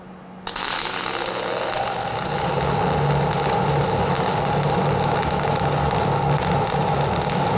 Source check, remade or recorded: recorded